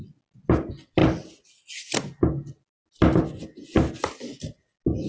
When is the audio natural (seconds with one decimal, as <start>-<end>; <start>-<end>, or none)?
0.0-5.1

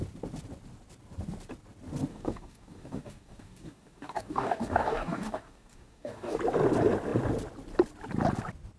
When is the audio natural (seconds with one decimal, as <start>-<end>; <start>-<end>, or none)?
0.0-2.1; 6.4-8.8

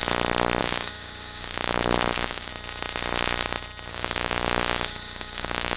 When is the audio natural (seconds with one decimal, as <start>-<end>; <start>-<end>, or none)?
0.0-0.6; 2.5-3.9

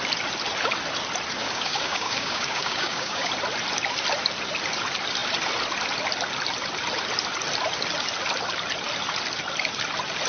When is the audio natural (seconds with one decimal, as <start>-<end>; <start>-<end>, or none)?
0.0-1.4; 3.3-10.3

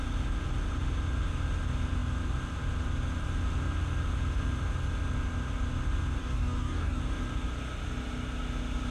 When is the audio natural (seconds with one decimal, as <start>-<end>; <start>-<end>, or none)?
0.0-6.2; 7.0-8.9

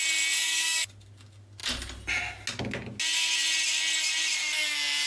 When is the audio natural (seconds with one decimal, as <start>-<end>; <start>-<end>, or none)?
0.0-0.4; 0.9-5.1